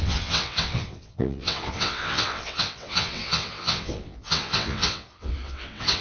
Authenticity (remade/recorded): remade